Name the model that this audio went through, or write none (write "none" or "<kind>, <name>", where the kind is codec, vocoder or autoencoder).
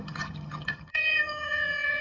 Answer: vocoder, HiFi-GAN